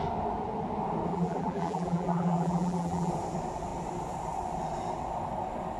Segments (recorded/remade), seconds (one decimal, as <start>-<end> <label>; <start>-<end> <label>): 0.0-1.1 recorded; 1.1-3.1 remade; 3.1-5.8 recorded